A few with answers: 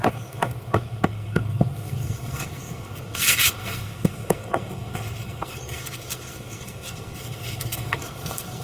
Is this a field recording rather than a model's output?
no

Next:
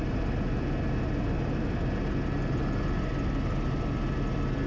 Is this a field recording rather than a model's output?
yes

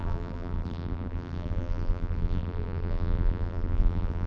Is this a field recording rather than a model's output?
no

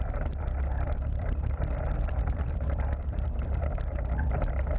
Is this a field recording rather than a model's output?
no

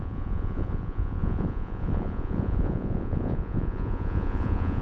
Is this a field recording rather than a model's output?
no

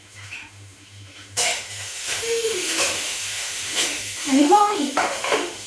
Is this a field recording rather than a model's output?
no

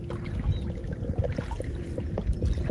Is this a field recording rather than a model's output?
yes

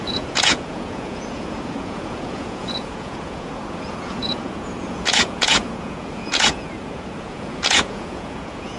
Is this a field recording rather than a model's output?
no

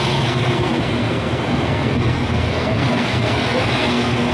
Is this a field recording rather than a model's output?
no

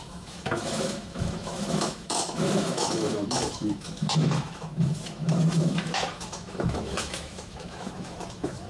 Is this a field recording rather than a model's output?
no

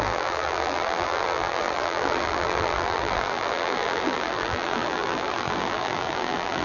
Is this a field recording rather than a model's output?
no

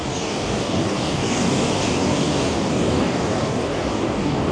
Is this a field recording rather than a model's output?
no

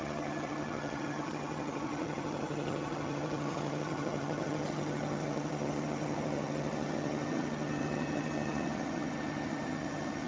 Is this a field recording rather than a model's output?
no